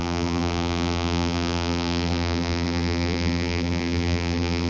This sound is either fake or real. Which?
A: fake